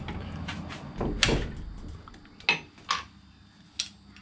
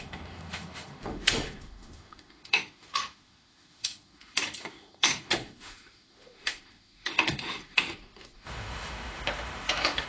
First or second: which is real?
first